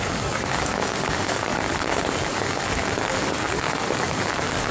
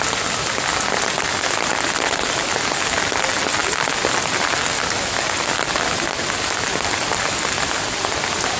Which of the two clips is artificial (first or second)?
first